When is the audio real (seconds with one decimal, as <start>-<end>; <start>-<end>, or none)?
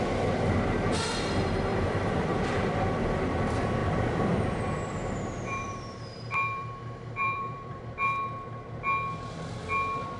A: 0.0-1.7; 2.5-3.8; 7.8-10.2